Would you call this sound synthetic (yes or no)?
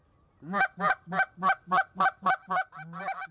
no